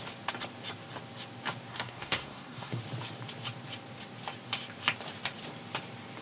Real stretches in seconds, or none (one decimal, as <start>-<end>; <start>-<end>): 0.0-1.7; 2.8-6.2